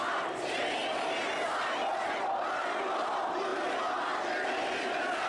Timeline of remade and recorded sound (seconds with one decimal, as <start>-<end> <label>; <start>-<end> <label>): 0.0-5.3 recorded